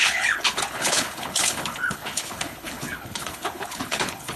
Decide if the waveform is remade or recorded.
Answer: remade